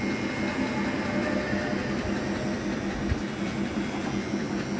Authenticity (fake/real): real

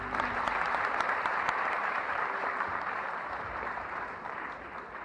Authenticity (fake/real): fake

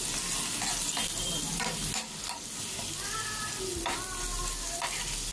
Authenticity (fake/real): real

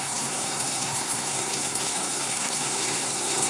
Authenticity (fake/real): fake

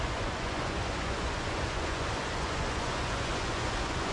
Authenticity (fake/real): fake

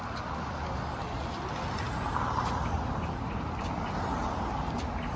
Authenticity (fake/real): real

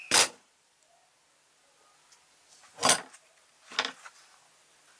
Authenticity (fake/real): real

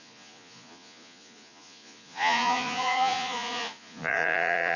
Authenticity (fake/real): fake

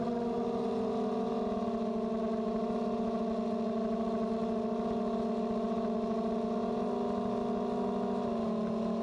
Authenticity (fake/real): real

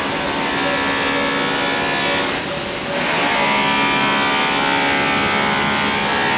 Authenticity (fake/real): real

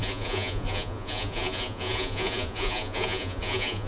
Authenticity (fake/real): fake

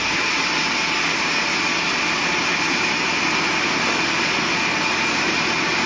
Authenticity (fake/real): real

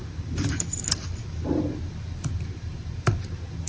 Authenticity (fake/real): fake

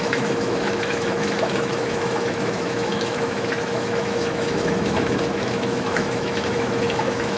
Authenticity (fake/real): fake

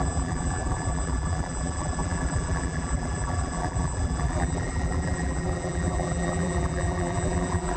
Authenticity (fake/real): fake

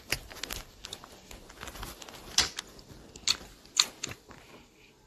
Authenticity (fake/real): real